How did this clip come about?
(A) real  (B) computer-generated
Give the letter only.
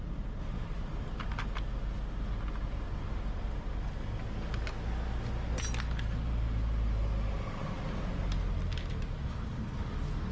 A